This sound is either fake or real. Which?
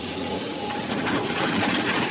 fake